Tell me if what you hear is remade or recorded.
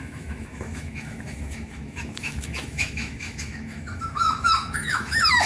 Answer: remade